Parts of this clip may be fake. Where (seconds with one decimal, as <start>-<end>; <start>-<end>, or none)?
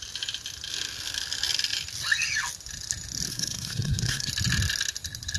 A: 3.3-4.3